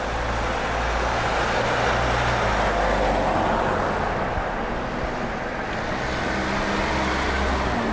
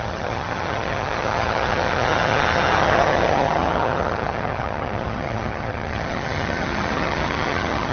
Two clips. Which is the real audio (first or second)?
first